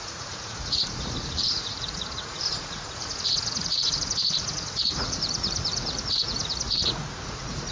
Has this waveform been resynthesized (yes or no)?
yes